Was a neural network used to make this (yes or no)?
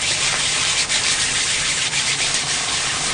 no